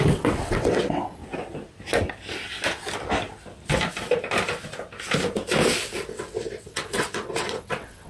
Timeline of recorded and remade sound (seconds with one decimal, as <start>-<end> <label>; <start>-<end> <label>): 0.0-1.2 remade; 1.2-6.1 recorded; 6.1-8.1 remade